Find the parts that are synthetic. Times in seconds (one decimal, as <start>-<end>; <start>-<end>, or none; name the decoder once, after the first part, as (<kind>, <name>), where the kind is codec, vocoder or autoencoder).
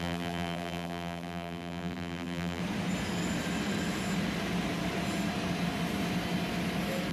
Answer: 0.0-2.6 (vocoder, BigVGAN v2)